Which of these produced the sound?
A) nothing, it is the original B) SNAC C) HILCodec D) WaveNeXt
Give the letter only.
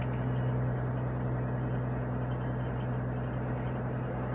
A